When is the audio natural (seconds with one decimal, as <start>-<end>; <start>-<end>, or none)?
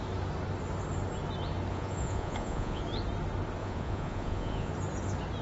0.0-1.7; 2.8-3.6; 4.7-5.4